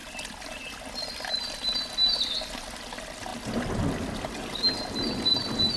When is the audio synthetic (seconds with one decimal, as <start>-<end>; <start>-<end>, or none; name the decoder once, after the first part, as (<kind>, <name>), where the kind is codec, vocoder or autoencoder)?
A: none